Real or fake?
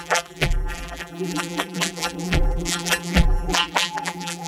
fake